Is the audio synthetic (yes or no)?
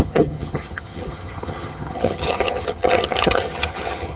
yes